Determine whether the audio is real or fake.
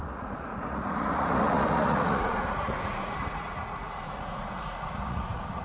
fake